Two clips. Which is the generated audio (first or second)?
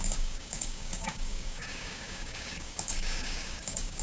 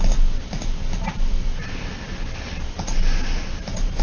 first